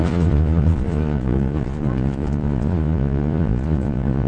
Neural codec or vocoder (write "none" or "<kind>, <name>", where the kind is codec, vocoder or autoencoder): vocoder, Vocos